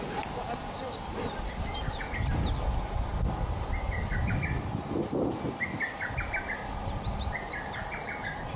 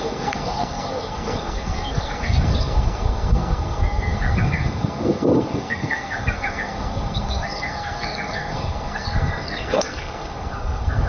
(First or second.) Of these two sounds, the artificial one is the second